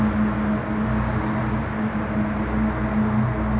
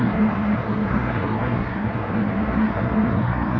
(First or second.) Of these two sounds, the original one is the first